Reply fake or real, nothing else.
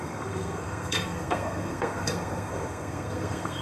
fake